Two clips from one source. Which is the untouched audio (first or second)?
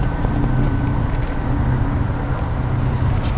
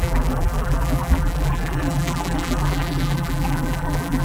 first